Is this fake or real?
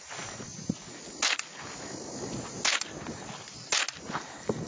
real